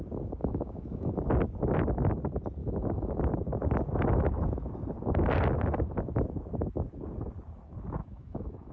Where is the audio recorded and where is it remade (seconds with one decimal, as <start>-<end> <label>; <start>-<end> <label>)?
0.0-0.4 recorded; 0.4-1.1 remade; 1.1-2.6 recorded; 2.6-3.2 remade; 3.2-8.0 recorded; 8.0-8.7 remade